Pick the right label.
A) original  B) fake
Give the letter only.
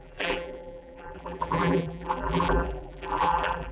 B